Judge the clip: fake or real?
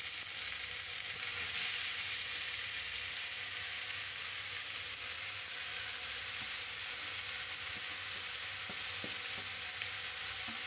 real